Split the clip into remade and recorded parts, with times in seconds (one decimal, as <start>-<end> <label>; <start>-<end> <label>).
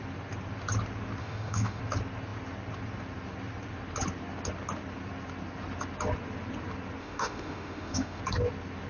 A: 0.0-1.2 recorded; 1.2-1.8 remade; 1.8-7.0 recorded; 7.0-8.2 remade; 8.2-8.9 recorded